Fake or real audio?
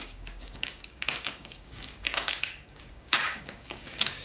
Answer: fake